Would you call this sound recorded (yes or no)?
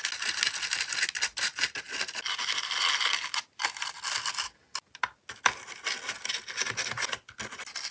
yes